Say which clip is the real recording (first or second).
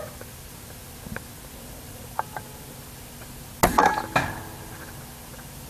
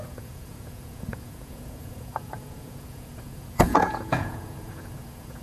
first